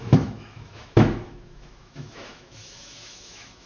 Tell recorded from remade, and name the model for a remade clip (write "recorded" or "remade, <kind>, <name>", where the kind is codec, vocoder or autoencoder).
remade, autoencoder, DAC-VAE